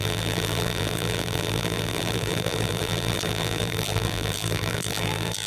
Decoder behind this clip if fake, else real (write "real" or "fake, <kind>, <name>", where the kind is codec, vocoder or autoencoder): fake, vocoder, BigVGAN v2